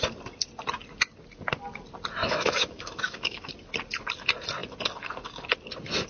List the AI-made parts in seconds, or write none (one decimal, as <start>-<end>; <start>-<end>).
2.2-3.5